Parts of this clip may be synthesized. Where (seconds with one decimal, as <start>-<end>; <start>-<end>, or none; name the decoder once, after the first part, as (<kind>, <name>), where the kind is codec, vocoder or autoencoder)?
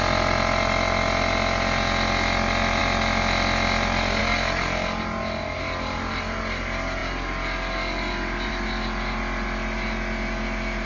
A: none